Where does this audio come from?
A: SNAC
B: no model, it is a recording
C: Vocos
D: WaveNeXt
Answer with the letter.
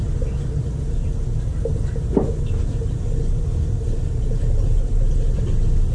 B